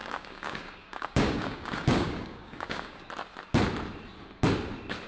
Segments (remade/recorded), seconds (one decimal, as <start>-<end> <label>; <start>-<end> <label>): 0.0-3.1 remade; 3.1-5.1 recorded